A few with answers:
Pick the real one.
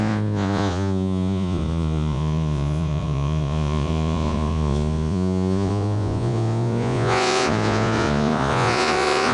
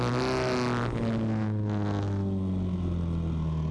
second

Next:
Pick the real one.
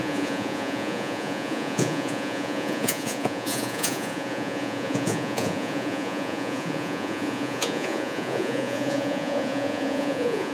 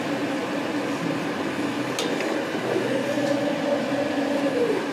second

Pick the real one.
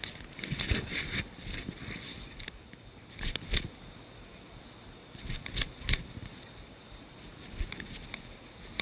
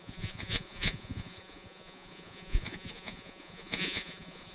first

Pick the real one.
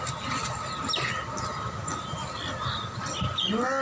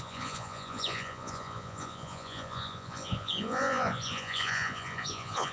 first